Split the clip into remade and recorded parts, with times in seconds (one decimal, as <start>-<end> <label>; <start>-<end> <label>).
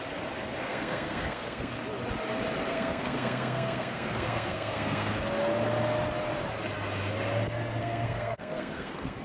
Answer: 0.0-0.6 recorded; 0.6-1.7 remade; 1.7-2.7 recorded; 2.7-5.2 remade; 5.2-7.8 recorded; 7.8-9.2 remade